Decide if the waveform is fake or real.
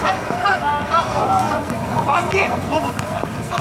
fake